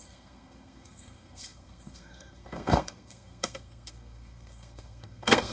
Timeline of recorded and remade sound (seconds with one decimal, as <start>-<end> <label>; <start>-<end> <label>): 0.0-5.5 remade